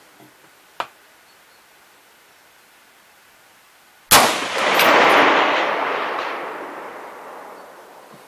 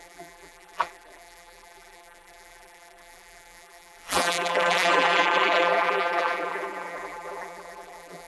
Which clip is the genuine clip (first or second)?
first